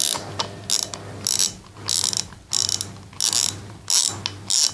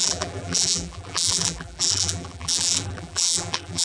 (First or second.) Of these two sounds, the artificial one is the second